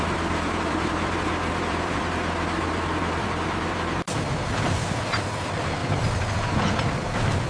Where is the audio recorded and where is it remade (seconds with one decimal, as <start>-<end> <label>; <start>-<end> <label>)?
0.0-5.8 remade; 5.8-6.6 recorded; 6.6-7.5 remade